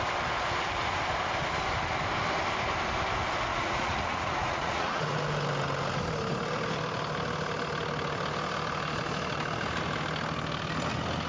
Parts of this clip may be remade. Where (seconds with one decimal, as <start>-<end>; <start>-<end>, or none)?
3.5-5.2